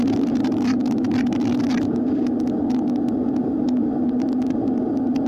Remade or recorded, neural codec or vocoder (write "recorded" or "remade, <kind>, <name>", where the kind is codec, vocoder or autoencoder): recorded